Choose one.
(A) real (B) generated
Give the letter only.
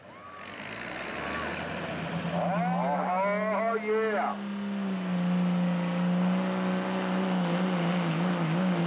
A